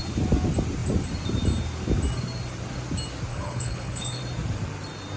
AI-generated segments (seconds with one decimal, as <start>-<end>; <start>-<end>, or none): 3.3-4.2